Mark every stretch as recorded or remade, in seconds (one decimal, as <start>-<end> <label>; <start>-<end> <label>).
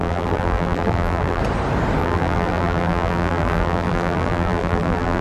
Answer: 0.0-1.4 remade; 1.4-2.0 recorded; 2.0-5.2 remade